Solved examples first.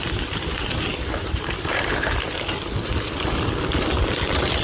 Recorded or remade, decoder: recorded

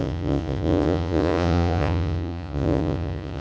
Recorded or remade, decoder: remade, vocoder, Vocos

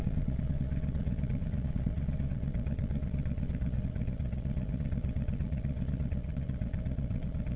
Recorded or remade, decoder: remade, vocoder, Vocos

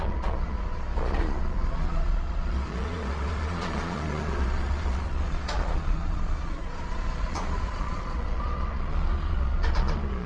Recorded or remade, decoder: remade, vocoder, Vocos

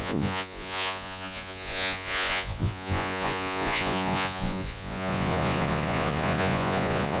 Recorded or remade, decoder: remade, vocoder, Vocos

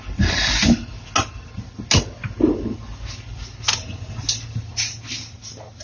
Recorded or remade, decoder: recorded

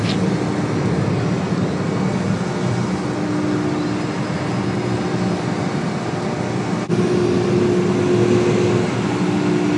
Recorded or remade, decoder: recorded